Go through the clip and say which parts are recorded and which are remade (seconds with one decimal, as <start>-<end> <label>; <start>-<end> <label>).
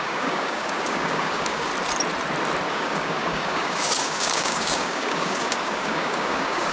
0.0-1.7 remade; 1.7-2.7 recorded; 2.7-6.7 remade